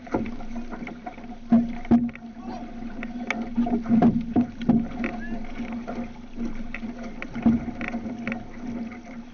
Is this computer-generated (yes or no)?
no